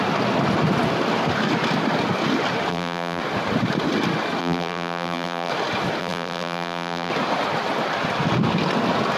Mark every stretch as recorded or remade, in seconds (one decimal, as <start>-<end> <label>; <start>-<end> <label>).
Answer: 0.0-2.7 recorded; 2.7-3.2 remade; 3.2-4.4 recorded; 4.4-5.5 remade; 5.5-6.0 recorded; 6.0-7.1 remade; 7.1-9.2 recorded